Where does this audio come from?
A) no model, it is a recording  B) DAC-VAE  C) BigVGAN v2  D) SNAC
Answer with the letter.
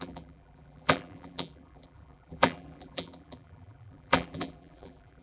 C